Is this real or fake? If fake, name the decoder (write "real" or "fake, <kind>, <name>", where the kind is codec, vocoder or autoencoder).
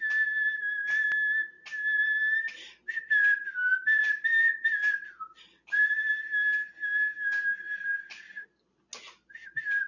real